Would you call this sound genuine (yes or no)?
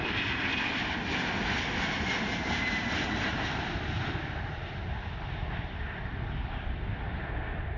no